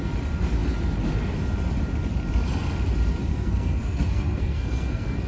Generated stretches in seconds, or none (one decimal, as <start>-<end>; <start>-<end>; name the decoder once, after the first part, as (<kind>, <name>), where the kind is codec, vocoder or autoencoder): 3.3-5.3 (codec, SNAC)